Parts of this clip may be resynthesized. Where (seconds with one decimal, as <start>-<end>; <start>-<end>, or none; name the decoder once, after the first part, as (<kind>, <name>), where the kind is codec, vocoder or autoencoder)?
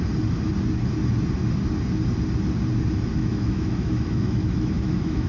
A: 3.1-5.3 (autoencoder, DAC-VAE)